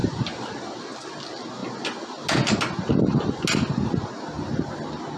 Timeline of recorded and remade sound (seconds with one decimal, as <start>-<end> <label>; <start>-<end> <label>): 0.0-5.2 recorded